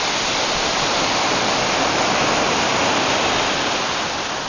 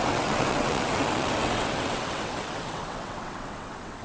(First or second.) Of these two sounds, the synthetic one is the second